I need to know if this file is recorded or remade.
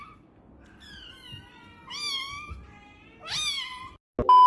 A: recorded